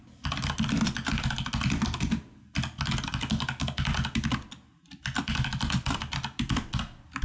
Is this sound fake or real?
real